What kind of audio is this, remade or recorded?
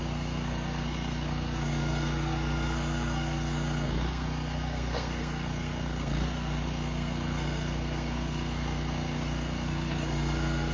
remade